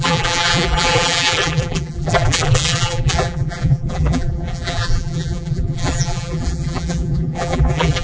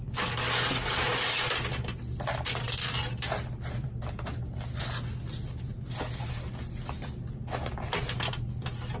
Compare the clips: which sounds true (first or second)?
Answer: second